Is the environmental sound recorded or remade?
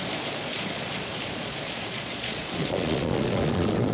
remade